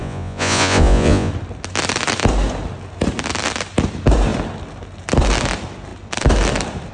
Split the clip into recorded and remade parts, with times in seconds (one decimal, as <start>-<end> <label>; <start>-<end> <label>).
0.0-1.3 remade; 1.3-6.9 recorded